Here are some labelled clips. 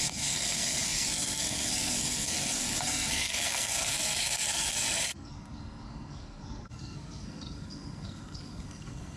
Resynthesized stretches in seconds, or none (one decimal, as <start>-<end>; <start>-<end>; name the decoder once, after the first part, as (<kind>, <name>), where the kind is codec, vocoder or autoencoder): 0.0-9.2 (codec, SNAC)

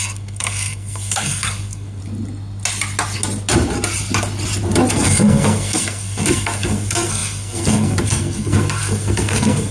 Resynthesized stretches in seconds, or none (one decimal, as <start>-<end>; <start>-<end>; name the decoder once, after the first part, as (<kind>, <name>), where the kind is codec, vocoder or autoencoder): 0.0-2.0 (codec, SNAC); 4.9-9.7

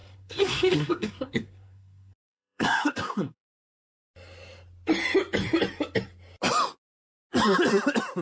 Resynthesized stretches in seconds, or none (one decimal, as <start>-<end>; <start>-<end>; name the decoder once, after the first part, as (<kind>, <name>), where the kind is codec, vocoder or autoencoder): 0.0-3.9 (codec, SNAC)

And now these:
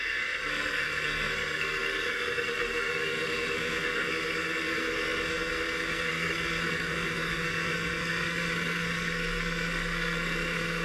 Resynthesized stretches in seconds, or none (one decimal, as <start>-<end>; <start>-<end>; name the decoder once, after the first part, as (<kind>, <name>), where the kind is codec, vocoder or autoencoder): 0.0-10.8 (codec, SNAC)

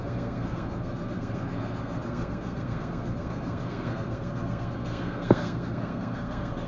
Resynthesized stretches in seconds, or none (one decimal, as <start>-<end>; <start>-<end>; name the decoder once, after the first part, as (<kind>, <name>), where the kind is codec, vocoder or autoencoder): 0.0-6.7 (codec, SNAC)

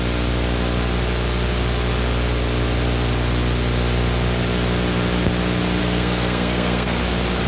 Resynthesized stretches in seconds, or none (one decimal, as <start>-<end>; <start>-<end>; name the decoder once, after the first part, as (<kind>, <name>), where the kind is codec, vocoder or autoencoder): 5.8-7.0 (codec, SNAC)

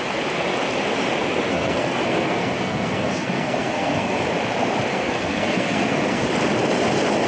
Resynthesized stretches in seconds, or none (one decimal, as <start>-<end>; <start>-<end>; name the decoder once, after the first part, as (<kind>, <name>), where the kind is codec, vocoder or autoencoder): 1.5-4.2 (codec, SNAC); 4.9-6.3